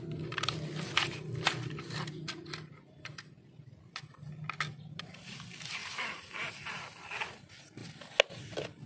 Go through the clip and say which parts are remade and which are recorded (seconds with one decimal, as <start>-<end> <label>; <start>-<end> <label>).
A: 0.0-5.8 recorded; 5.8-6.3 remade; 6.3-8.9 recorded